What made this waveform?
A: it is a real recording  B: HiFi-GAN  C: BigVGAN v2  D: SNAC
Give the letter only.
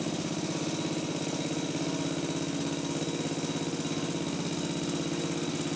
A